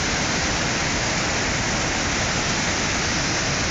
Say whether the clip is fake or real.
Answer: real